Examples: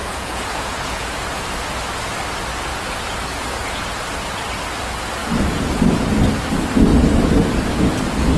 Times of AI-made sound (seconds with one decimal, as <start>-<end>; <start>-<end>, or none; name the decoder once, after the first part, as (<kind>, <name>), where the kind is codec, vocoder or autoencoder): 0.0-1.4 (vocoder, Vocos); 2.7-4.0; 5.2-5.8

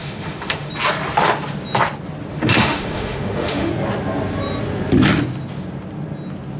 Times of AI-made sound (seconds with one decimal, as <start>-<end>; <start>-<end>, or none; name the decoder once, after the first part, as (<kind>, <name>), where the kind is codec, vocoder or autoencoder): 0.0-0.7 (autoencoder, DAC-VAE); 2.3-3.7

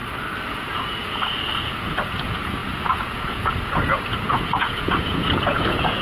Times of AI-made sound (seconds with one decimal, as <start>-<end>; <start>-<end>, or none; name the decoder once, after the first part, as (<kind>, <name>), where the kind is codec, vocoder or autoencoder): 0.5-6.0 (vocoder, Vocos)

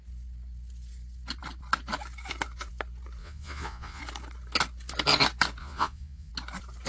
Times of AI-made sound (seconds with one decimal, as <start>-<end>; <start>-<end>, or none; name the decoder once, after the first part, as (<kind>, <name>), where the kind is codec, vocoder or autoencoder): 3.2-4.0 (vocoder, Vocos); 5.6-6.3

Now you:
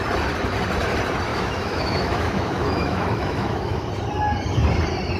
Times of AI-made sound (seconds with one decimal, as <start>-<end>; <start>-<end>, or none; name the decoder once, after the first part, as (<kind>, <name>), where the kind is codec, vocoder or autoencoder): 1.3-3.9 (autoencoder, DAC-VAE)

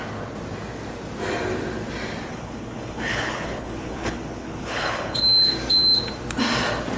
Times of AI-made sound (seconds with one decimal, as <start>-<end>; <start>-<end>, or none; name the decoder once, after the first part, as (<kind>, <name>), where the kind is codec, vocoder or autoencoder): 2.3-5.2 (codec, HILCodec)